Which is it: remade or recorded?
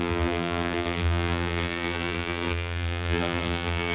remade